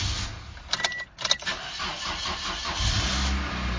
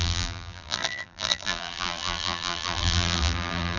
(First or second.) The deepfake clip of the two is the second